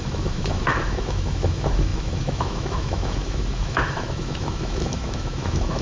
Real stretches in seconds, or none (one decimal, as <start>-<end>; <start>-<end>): none